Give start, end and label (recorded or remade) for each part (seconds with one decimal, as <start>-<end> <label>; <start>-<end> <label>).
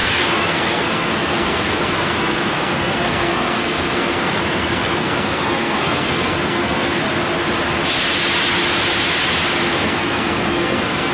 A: 0.0-7.0 remade; 7.0-9.8 recorded; 9.8-11.1 remade